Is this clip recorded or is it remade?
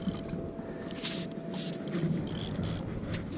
recorded